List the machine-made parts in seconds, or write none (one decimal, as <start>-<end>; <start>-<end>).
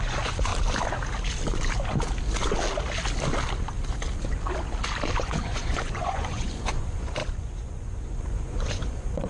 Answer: 0.0-0.5; 5.2-9.3